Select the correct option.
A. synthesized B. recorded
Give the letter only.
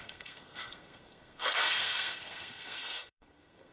A